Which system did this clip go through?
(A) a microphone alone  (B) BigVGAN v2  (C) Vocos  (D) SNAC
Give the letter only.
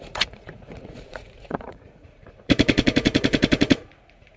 C